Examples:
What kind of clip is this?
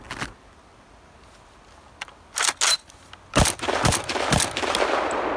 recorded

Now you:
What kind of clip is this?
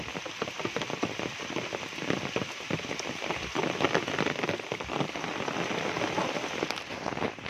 remade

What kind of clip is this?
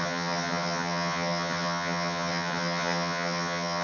remade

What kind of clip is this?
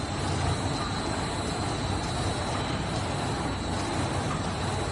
recorded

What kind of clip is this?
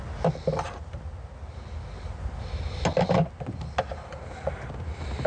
recorded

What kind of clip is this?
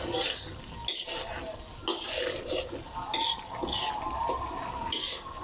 recorded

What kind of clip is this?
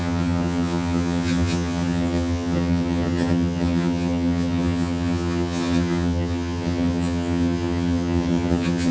remade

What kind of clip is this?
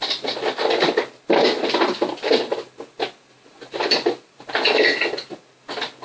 recorded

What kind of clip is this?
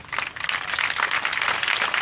recorded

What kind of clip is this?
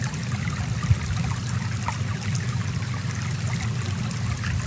recorded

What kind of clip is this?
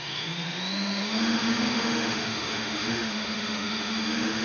remade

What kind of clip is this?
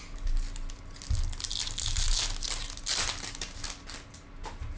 recorded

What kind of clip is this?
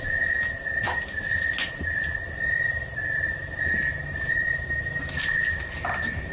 recorded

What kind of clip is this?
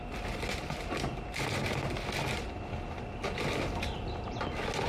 recorded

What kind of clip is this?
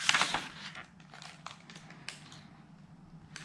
recorded